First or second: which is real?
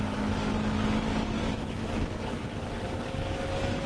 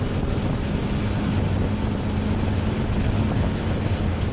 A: second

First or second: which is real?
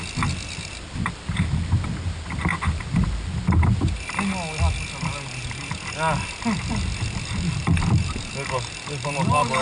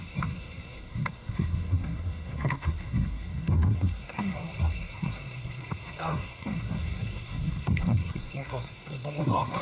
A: first